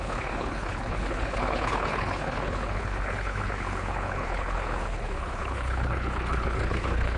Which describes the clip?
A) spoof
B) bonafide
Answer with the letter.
A